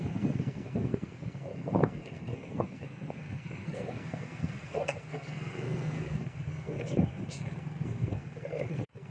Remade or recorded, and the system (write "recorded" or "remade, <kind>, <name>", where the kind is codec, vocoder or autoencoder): remade, codec, SNAC